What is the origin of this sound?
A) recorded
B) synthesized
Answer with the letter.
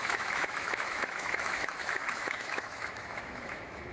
B